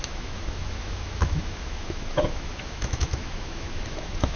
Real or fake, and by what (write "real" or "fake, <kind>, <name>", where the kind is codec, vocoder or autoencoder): fake, autoencoder, DAC-VAE